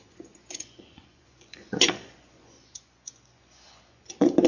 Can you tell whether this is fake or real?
fake